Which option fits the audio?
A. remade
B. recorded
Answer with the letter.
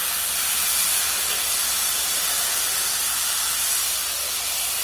B